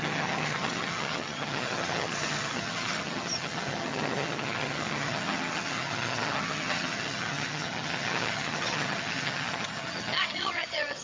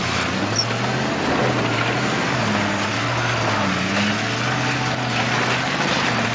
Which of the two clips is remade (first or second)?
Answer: first